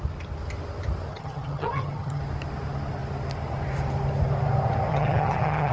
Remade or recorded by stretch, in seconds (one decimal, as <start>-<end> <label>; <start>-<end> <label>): 0.0-1.1 recorded; 1.1-2.2 remade; 2.2-4.9 recorded; 4.9-5.7 remade